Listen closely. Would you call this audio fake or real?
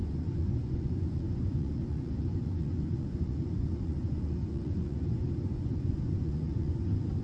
fake